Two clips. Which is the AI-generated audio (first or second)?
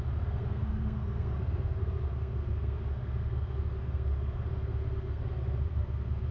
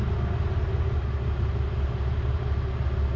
first